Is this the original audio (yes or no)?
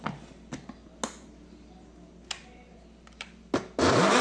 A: yes